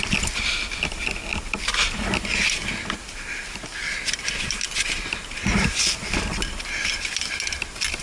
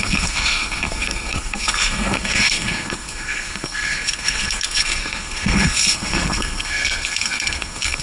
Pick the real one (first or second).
first